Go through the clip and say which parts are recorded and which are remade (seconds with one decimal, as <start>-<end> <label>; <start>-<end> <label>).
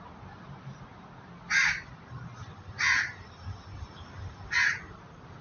0.0-5.4 recorded